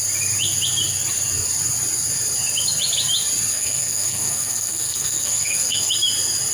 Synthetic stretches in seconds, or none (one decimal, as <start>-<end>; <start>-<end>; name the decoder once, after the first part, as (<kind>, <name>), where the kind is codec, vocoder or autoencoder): 3.5-5.9 (codec, SNAC)